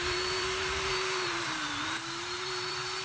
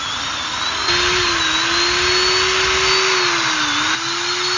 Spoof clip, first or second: first